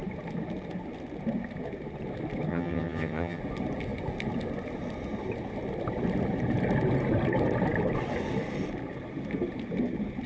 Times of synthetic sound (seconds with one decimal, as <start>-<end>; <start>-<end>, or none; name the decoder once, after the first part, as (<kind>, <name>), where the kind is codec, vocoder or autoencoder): 2.5-3.4 (vocoder, HiFi-GAN)